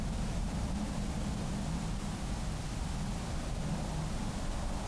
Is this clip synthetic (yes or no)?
no